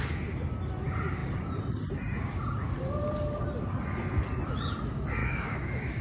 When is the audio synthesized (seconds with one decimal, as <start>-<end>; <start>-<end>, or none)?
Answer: 5.2-6.0